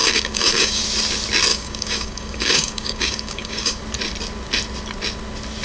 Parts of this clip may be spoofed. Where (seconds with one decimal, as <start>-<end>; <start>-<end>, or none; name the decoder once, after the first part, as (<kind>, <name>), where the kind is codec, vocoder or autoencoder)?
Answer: 0.0-0.8 (codec, DAC); 1.5-3.8